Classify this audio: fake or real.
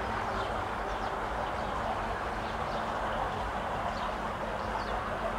real